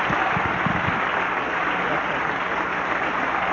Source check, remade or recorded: recorded